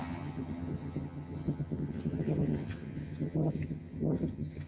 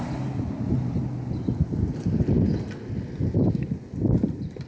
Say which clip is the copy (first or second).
first